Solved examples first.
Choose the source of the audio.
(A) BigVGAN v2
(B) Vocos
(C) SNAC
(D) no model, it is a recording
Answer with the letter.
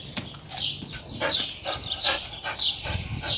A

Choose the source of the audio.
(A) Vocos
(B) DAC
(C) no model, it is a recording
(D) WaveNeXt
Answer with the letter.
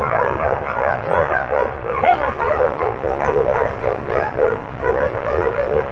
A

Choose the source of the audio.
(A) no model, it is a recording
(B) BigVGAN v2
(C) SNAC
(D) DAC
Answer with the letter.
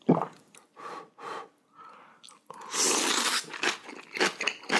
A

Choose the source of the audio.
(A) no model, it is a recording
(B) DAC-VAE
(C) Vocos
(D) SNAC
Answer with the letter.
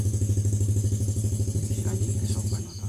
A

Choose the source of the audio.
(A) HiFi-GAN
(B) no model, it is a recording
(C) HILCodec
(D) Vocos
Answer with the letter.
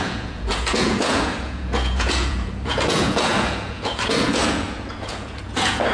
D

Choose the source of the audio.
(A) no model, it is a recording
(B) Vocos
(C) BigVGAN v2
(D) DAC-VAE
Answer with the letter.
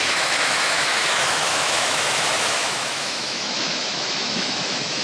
D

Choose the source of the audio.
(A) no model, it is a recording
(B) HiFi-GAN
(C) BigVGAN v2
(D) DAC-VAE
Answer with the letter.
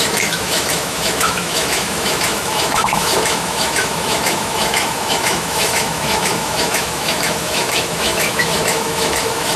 D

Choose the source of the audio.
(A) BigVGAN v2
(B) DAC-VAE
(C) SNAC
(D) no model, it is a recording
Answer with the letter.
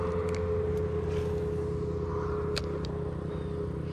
D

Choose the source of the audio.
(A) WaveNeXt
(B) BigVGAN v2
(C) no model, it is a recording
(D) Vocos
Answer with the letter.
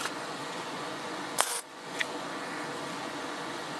D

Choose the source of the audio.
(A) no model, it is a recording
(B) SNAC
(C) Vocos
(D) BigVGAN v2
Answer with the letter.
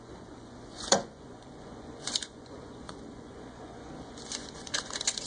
C